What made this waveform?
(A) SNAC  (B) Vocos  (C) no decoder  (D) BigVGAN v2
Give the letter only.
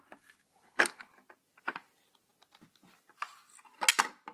C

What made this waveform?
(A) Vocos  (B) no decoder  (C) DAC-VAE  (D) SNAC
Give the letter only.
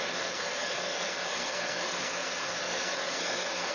D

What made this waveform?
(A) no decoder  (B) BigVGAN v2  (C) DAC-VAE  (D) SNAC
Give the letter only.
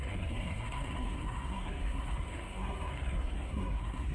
D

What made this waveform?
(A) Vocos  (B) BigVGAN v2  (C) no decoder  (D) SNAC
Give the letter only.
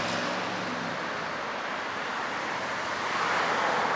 C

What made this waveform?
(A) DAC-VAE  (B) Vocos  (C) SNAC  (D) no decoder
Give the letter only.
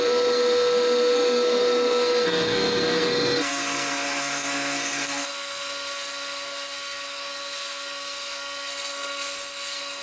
C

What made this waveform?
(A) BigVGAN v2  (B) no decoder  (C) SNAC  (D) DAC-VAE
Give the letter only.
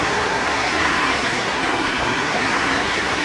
C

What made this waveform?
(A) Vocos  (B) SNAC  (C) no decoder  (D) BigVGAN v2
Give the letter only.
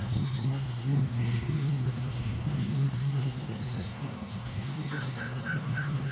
B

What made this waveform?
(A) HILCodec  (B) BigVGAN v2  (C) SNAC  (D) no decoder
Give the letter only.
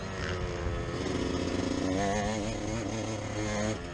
D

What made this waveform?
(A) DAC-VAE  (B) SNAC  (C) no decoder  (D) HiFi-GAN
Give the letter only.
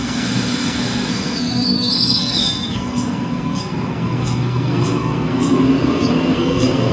B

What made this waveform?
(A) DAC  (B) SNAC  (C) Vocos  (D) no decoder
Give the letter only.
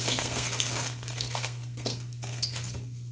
B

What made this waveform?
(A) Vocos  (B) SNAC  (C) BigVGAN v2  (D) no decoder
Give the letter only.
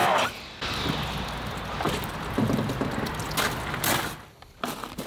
D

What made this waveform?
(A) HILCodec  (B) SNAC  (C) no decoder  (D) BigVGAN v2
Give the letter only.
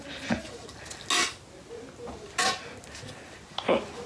C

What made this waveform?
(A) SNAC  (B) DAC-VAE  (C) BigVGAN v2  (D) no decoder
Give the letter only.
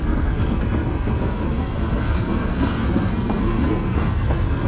A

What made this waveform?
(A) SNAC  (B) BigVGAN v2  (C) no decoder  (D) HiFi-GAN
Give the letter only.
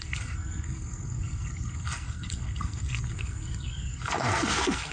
A